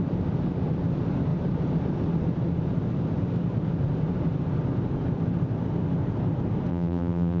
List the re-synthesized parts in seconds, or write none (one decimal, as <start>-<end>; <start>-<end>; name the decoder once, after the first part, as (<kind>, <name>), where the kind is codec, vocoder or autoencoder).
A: 6.7-7.4 (vocoder, BigVGAN v2)